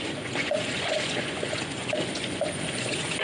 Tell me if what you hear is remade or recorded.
remade